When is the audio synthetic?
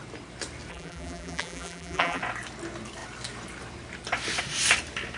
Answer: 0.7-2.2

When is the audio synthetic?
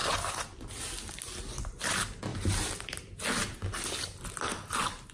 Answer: 2.3-3.0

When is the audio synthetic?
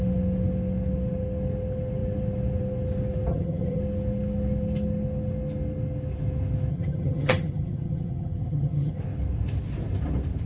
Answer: 3.3-3.8; 6.7-9.0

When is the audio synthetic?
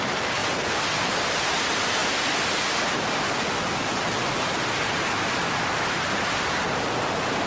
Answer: 0.0-0.4; 1.0-2.0; 4.9-7.5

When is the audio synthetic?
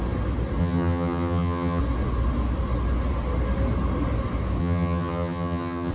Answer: 0.6-1.8; 4.6-5.9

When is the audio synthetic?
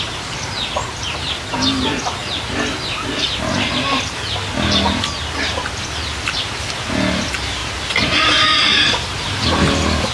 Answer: none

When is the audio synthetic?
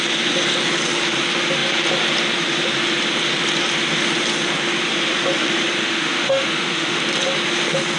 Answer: 5.8-7.0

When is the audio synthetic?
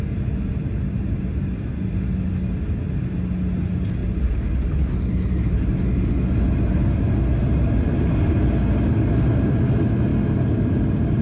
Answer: 7.4-8.4